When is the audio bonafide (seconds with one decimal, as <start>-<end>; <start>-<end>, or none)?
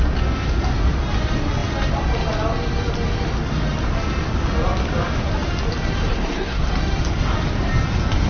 0.0-6.1; 6.7-8.3